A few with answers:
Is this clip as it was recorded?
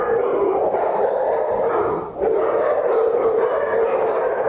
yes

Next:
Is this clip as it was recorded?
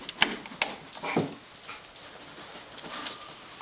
yes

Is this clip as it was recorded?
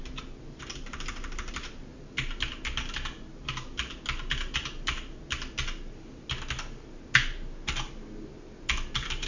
yes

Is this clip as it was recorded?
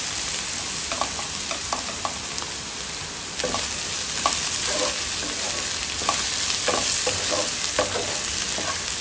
yes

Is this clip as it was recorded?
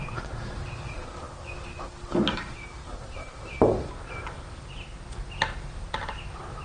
yes